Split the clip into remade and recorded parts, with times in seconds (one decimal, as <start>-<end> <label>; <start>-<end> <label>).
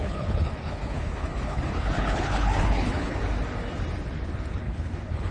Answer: 0.0-3.2 remade; 3.2-4.6 recorded; 4.6-5.3 remade